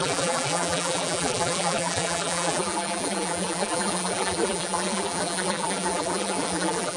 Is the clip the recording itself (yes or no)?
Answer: no